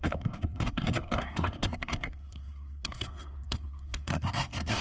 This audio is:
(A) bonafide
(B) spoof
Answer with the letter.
B